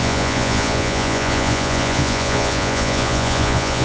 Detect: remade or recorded remade